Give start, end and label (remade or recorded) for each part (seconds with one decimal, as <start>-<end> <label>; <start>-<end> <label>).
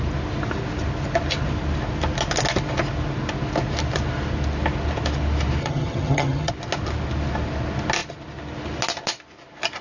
0.0-5.6 recorded; 5.6-6.5 remade; 6.5-9.8 recorded